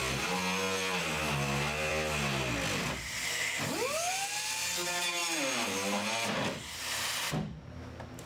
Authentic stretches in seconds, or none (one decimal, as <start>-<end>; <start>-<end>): 0.0-8.3